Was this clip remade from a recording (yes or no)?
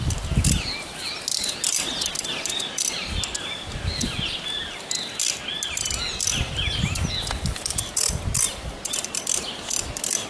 no